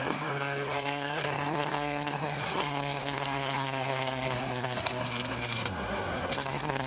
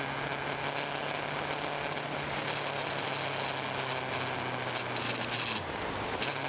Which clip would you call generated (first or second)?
first